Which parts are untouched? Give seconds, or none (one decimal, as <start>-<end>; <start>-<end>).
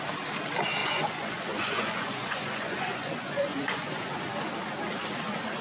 0.0-0.8; 4.2-5.6